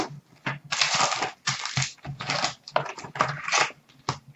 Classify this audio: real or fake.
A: real